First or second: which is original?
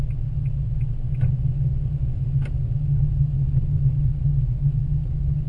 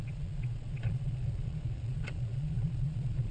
first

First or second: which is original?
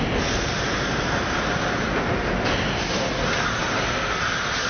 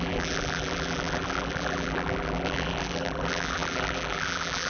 first